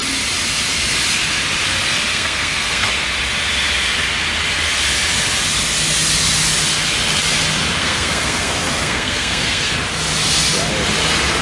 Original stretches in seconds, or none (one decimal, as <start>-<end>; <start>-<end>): 0.0-2.1; 2.9-7.8; 9.7-11.4